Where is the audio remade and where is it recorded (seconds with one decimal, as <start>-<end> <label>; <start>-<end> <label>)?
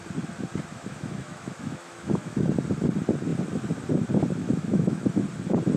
0.0-0.7 recorded; 0.7-2.5 remade; 2.5-4.4 recorded; 4.4-5.2 remade; 5.2-5.8 recorded